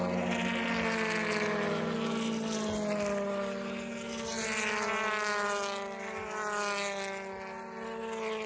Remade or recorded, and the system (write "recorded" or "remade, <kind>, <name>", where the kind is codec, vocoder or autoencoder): recorded